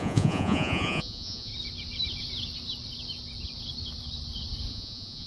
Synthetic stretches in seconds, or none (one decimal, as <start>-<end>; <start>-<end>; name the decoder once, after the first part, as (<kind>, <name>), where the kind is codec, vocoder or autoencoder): 0.0-1.5 (vocoder, Vocos); 4.7-5.3